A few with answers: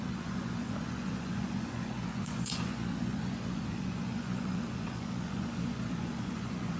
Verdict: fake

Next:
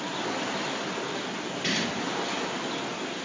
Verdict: real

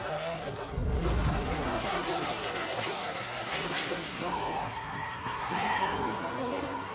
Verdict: fake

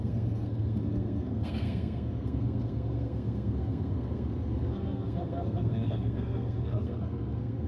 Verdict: fake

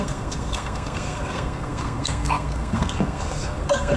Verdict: fake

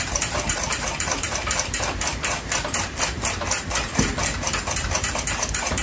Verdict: fake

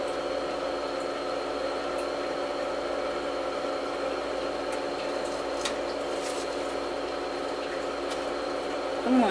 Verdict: real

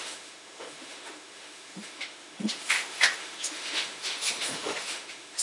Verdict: fake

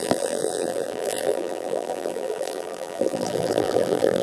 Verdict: fake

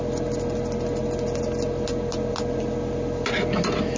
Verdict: real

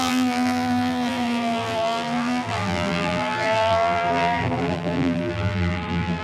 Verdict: fake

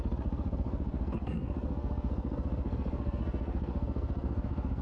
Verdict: fake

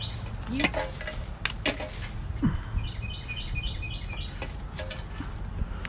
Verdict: real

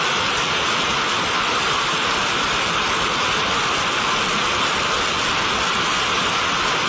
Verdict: real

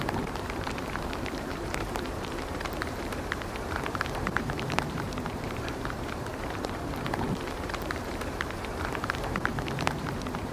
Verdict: fake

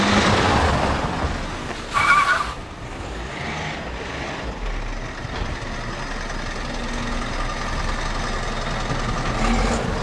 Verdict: real